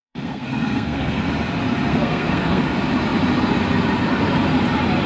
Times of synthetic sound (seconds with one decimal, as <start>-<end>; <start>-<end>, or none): 0.0-1.3; 1.9-2.6